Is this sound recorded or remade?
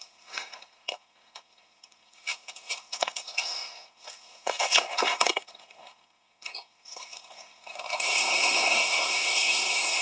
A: remade